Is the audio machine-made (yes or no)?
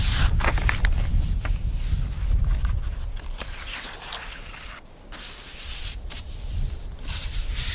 no